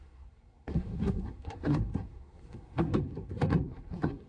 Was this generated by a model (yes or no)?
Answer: yes